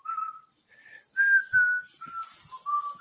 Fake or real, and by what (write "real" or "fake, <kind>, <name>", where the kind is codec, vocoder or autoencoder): real